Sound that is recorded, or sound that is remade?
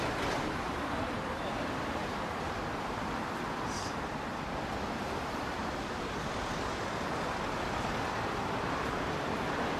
remade